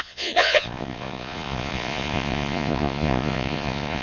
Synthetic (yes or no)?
yes